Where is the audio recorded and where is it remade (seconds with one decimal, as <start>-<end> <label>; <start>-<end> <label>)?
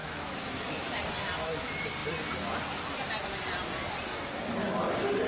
0.0-0.9 remade; 0.9-5.3 recorded